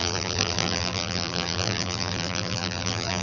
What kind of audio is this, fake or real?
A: fake